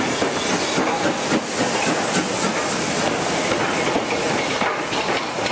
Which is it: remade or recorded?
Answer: recorded